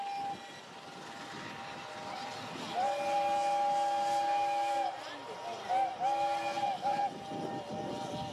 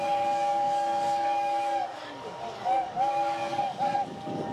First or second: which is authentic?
first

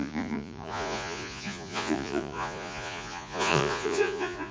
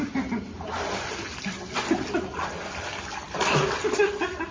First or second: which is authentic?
second